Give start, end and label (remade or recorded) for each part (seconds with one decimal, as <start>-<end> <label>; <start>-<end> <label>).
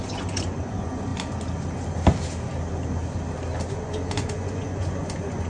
0.0-1.1 remade; 1.1-3.7 recorded; 3.7-5.5 remade